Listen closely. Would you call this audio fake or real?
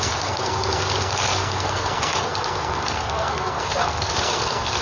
fake